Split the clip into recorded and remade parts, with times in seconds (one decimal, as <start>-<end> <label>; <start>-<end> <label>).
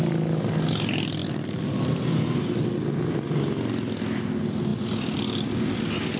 0.0-6.2 recorded